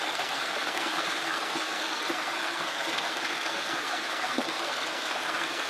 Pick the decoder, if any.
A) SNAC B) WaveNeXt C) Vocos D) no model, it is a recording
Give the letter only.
A